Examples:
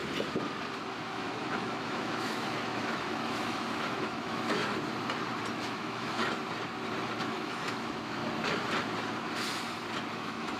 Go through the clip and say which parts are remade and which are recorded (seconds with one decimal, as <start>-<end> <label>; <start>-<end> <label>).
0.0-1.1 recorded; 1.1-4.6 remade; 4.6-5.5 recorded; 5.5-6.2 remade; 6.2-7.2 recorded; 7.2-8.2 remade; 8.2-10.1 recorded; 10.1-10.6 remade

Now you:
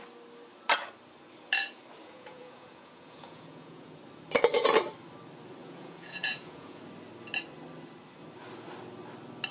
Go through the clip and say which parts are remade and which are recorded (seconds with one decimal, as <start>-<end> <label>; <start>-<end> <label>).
0.0-2.0 recorded; 2.0-4.0 remade; 4.0-5.6 recorded; 5.6-6.8 remade; 6.8-9.5 recorded

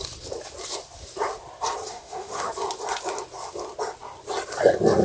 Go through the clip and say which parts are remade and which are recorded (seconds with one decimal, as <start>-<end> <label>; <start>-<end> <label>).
0.0-1.9 recorded; 1.9-2.5 remade; 2.5-5.0 recorded

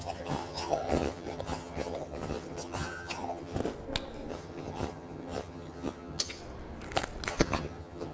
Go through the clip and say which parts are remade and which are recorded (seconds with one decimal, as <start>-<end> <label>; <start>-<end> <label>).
0.0-3.6 remade; 3.6-4.3 recorded; 4.3-6.4 remade; 6.4-7.3 recorded; 7.3-8.1 remade

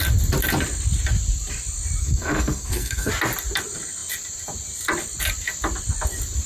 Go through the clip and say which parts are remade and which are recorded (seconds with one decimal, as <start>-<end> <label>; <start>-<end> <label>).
0.0-2.0 recorded; 2.0-3.1 remade; 3.1-6.5 recorded